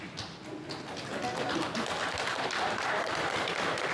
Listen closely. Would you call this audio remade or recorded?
recorded